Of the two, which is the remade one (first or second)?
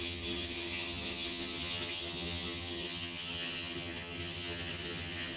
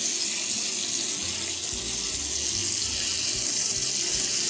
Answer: first